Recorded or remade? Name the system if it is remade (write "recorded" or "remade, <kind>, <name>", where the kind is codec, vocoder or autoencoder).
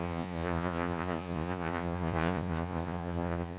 remade, vocoder, Vocos